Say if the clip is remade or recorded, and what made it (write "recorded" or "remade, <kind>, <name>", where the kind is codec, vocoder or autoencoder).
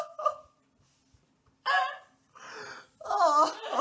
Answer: recorded